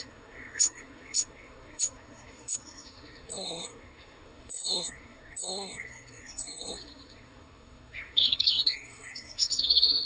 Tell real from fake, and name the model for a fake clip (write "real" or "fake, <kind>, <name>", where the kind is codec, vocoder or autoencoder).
fake, codec, SNAC